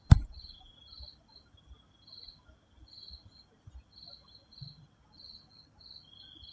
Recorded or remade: recorded